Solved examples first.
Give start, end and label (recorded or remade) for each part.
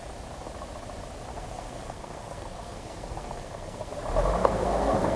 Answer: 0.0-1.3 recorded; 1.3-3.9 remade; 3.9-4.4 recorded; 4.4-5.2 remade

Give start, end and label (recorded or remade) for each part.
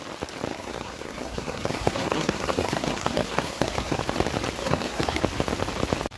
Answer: 0.0-0.5 recorded; 0.5-4.0 remade; 4.0-4.6 recorded; 4.6-5.2 remade; 5.2-6.2 recorded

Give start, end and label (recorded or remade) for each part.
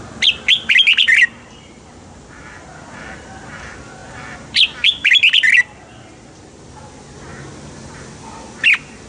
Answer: 0.0-9.1 recorded